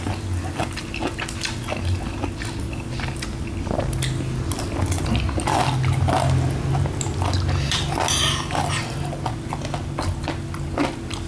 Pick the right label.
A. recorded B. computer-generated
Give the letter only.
A